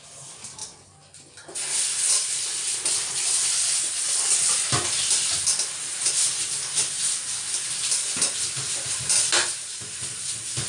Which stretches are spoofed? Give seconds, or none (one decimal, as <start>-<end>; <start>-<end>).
5.8-6.4; 9.4-9.9